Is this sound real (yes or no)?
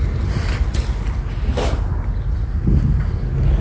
yes